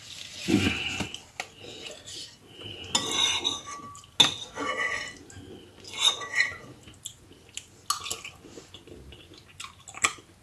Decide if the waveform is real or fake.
real